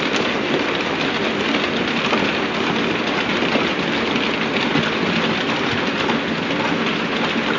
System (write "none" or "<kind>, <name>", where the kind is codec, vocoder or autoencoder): none